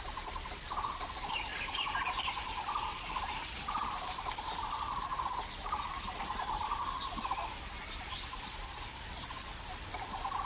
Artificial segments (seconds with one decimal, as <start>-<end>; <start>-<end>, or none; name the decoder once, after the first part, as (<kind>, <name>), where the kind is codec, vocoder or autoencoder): 1.2-2.0 (vocoder, BigVGAN v2); 6.2-9.0